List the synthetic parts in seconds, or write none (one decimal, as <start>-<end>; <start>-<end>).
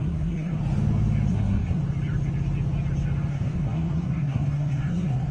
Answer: 0.0-0.6; 1.3-1.8; 3.3-5.3